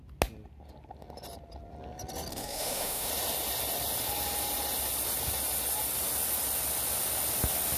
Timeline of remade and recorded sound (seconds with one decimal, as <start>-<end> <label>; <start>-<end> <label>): 0.0-2.3 recorded; 2.3-3.1 remade; 3.1-7.8 recorded